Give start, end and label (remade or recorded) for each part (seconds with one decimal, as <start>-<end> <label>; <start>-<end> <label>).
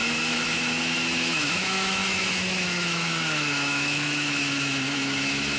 0.0-5.6 remade